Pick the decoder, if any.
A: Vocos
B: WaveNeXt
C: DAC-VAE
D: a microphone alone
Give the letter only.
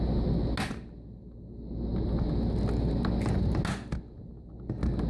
D